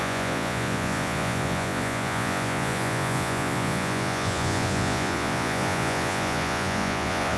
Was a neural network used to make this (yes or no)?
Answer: yes